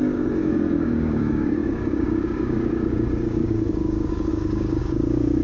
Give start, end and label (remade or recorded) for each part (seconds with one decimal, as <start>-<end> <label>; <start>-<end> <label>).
0.0-5.4 remade